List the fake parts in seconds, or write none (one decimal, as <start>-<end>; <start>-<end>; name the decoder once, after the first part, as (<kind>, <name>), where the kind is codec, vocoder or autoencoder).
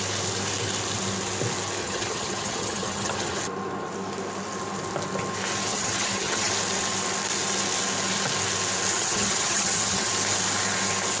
1.8-3.4 (vocoder, HiFi-GAN); 5.7-6.5; 9.0-10.1